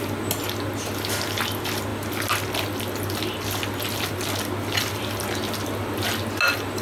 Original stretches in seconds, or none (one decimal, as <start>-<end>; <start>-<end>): 0.0-6.8